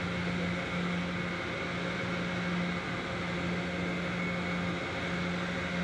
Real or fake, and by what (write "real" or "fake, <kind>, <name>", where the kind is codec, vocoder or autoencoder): real